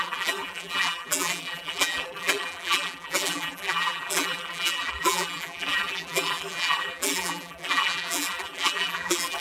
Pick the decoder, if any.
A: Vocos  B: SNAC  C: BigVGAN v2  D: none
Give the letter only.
C